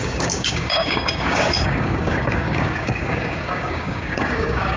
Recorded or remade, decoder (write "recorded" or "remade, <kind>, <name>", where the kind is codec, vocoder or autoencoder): remade, codec, DAC